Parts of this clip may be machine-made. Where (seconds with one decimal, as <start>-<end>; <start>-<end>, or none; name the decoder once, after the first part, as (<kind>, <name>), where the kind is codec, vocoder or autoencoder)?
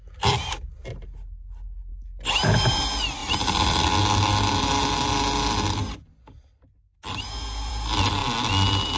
none